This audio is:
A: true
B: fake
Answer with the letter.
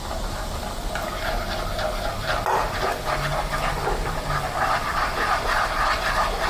A